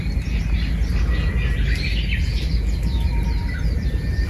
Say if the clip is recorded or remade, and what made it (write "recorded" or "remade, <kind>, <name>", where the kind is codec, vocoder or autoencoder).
recorded